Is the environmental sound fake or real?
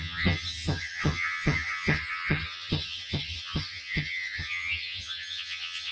fake